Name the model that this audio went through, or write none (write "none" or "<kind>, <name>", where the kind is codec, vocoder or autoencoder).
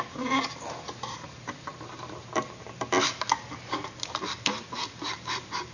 none